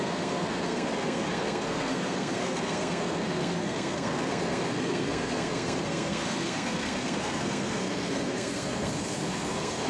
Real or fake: fake